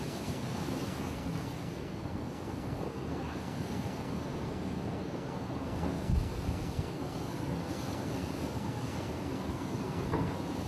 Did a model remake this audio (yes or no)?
yes